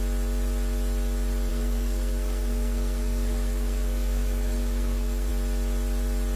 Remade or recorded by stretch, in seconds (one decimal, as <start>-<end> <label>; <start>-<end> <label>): 0.0-1.5 recorded; 1.5-5.3 remade; 5.3-6.4 recorded